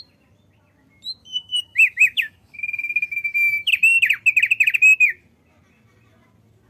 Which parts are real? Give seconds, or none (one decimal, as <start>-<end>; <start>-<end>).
0.0-1.2; 3.7-6.7